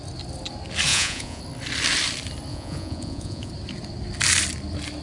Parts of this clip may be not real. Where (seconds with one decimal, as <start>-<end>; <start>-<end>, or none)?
0.9-1.4; 2.5-3.5